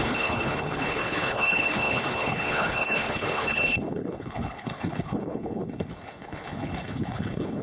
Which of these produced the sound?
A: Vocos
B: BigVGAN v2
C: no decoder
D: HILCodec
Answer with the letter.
D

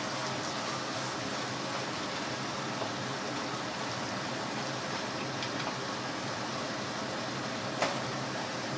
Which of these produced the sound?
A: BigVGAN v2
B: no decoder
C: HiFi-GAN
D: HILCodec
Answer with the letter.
B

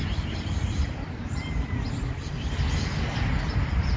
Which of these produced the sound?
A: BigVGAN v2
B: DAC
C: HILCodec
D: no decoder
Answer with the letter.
D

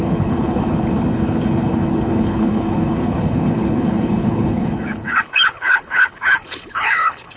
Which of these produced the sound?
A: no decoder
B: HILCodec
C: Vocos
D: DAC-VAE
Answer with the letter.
B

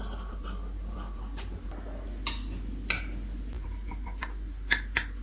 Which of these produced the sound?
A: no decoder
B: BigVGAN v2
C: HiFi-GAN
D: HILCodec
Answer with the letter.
A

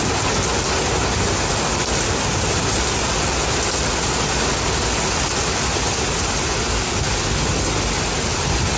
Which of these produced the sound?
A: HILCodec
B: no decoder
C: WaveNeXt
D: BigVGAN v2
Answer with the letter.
B